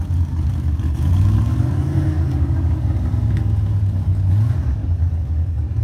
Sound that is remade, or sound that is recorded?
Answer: remade